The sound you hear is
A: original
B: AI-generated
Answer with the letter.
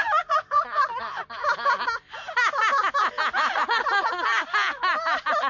A